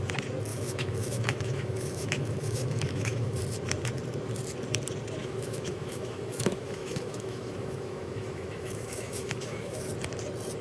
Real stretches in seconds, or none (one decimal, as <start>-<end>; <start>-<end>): 0.0-0.5; 3.4-5.2; 9.9-10.6